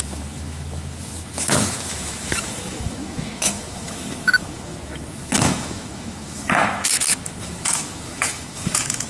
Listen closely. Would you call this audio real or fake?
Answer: fake